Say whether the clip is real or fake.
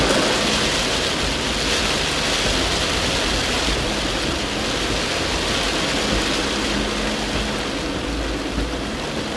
real